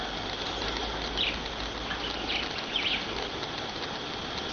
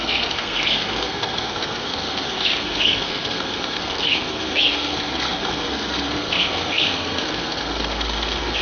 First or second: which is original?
first